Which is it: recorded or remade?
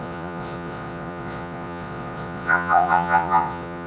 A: remade